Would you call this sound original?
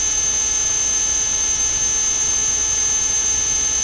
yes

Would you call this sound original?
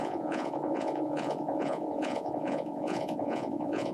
no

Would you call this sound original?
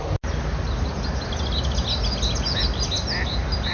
yes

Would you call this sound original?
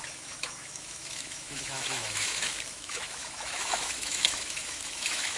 no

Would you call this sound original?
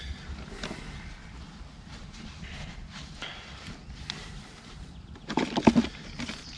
yes